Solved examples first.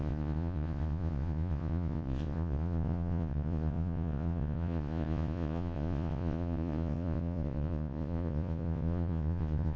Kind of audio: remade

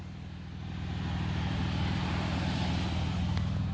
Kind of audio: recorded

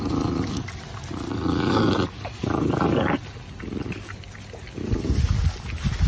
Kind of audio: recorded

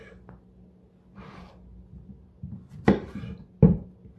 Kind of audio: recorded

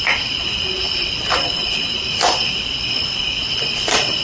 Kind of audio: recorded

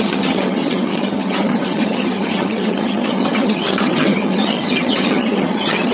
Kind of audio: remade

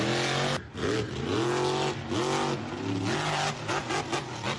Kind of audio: recorded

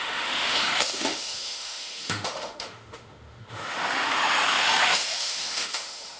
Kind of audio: remade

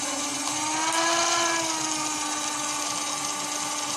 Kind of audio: recorded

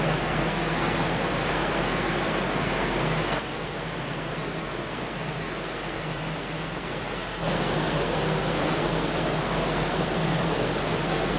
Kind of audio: remade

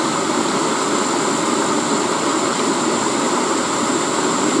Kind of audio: recorded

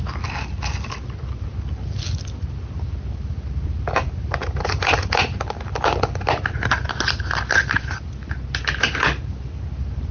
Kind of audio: recorded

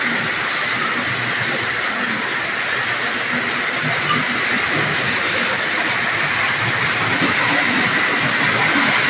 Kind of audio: recorded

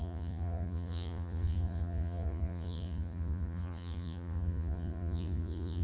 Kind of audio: remade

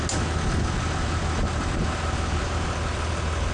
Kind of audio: recorded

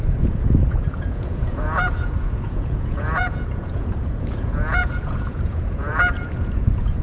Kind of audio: remade